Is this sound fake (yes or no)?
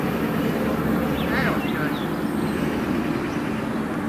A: no